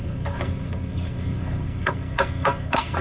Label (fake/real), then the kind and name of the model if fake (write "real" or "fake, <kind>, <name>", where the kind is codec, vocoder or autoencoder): fake, codec, SNAC